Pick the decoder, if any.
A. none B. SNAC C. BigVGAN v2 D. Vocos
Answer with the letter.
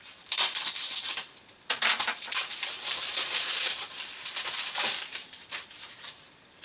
C